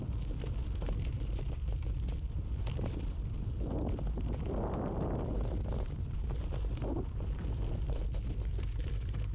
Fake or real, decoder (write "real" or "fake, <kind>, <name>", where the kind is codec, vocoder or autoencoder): fake, vocoder, BigVGAN v2